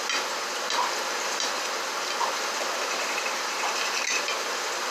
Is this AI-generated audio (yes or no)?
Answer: no